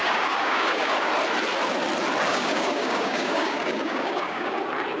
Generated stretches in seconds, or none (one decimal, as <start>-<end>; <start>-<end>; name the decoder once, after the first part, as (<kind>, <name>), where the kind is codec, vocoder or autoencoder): 0.0-1.1 (codec, DAC); 2.3-4.6